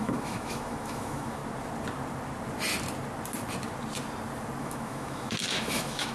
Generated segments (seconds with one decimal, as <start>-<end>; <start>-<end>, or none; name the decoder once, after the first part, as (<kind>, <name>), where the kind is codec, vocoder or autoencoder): 0.0-1.4 (autoencoder, DAC-VAE); 4.6-6.1